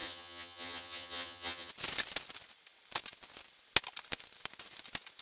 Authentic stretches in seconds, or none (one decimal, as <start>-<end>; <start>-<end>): 1.7-5.2